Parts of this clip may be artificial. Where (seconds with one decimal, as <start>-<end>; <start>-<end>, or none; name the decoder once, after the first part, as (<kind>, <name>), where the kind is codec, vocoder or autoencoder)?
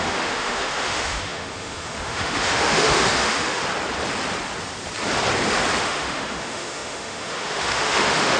0.0-3.6 (autoencoder, DAC-VAE); 5.8-8.4